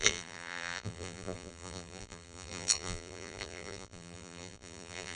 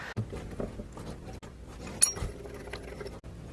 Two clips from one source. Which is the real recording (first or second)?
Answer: second